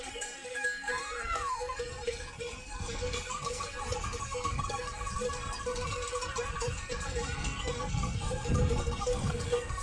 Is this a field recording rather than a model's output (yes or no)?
no